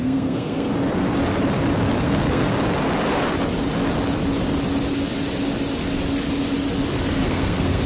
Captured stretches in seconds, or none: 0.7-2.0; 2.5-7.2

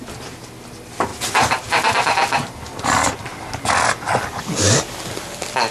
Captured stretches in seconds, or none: 0.0-5.7

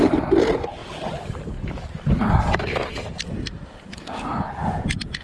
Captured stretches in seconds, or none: 0.0-4.6

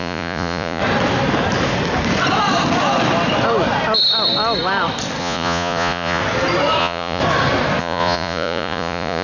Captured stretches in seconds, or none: 0.8-5.2; 6.2-6.8; 7.2-7.8

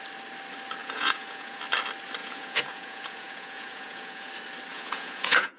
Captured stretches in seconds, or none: 0.0-0.8; 1.6-2.2; 4.3-4.7

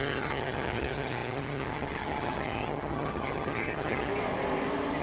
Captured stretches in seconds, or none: 4.1-5.0